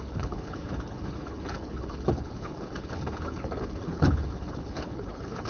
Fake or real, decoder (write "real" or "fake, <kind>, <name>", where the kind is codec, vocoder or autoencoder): fake, codec, HILCodec